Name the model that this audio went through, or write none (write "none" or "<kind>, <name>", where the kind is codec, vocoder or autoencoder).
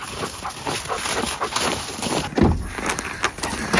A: none